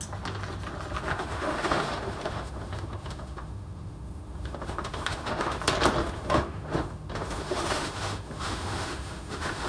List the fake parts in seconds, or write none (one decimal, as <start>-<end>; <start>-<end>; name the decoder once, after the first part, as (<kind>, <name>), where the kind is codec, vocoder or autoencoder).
1.1-5.6 (autoencoder, DAC-VAE); 6.0-9.7